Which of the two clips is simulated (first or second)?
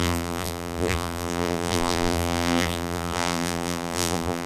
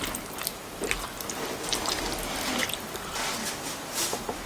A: first